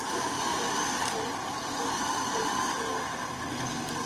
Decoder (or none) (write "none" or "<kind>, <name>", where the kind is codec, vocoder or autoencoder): none